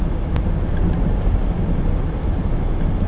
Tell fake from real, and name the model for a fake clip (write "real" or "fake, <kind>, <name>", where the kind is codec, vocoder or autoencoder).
real